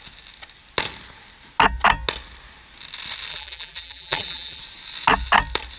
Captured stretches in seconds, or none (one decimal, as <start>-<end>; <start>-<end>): 0.0-3.3; 4.6-5.8